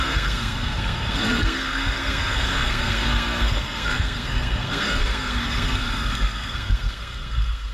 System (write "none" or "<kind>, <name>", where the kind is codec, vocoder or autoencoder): codec, SNAC